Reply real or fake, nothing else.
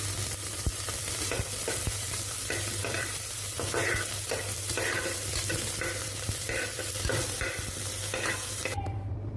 fake